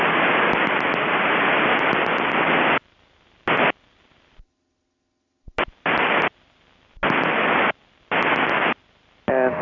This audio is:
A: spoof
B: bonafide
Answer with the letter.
B